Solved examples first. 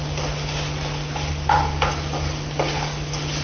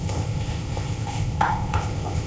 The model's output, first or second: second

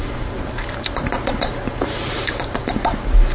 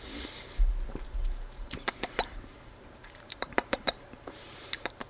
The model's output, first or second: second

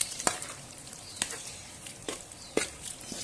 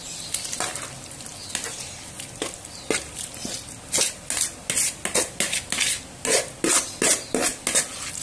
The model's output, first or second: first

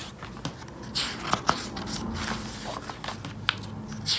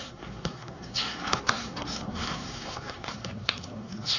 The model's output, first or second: second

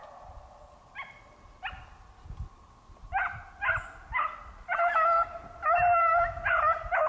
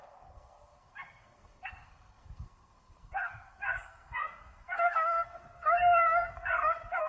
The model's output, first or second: second